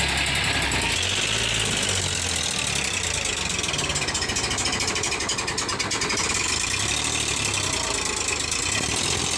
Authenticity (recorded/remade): recorded